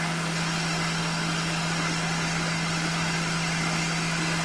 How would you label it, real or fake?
real